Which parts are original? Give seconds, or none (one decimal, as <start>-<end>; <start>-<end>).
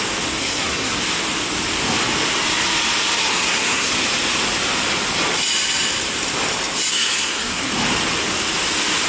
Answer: 0.0-0.4; 1.0-3.2; 3.9-6.9; 7.7-9.1